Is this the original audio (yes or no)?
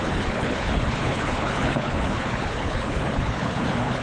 no